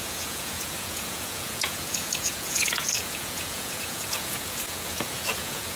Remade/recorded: remade